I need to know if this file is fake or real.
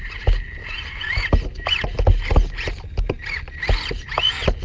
real